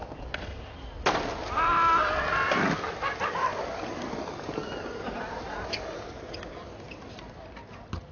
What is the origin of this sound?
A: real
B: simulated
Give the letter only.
A